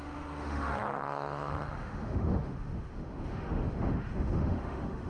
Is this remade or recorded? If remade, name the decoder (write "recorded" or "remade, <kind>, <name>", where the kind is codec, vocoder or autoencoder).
remade, autoencoder, DAC-VAE